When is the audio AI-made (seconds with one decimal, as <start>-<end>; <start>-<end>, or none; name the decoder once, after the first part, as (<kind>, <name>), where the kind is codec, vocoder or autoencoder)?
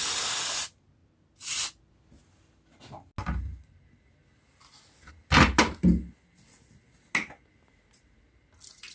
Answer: none